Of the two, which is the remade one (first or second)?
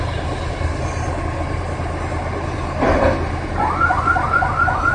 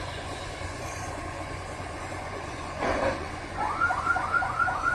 second